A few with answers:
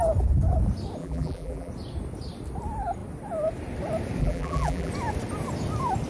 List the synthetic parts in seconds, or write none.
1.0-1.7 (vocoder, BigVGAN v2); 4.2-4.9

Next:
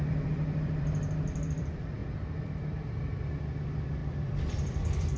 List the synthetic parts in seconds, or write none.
0.0-2.0 (vocoder, BigVGAN v2); 3.4-5.2

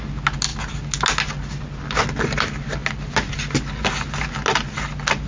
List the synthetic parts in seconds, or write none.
none

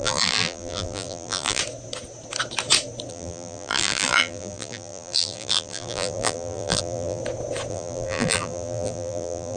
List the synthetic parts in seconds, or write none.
0.0-1.6 (vocoder, BigVGAN v2); 3.1-7.2; 7.7-9.6

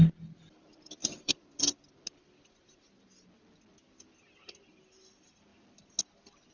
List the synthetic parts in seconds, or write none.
1.0-1.6 (vocoder, BigVGAN v2)

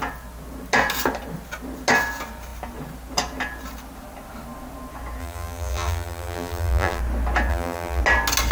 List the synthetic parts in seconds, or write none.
5.2-7.0 (vocoder, BigVGAN v2); 7.5-8.0